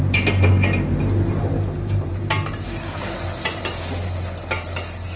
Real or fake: real